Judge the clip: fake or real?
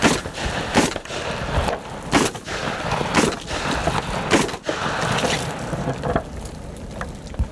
real